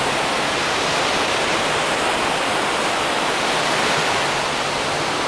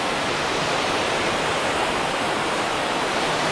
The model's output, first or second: second